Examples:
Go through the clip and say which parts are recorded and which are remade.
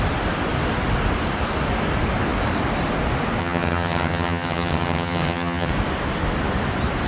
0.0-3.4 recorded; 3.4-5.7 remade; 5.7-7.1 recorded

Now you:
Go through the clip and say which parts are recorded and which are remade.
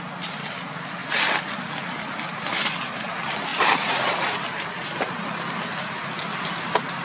0.0-3.5 recorded; 3.5-4.7 remade; 4.7-7.0 recorded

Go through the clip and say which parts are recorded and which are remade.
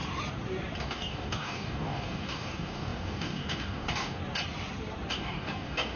0.0-0.8 recorded; 0.8-4.2 remade; 4.2-5.1 recorded; 5.1-6.0 remade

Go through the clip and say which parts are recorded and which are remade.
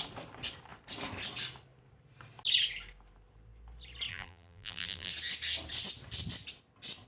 0.0-4.1 recorded; 4.1-5.1 remade; 5.1-7.1 recorded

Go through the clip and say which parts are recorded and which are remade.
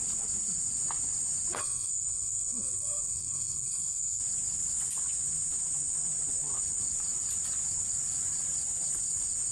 0.0-1.6 recorded; 1.6-4.2 remade; 4.2-9.5 recorded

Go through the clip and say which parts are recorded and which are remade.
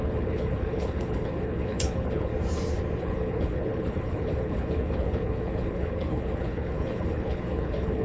0.0-2.3 remade; 2.3-3.0 recorded; 3.0-8.0 remade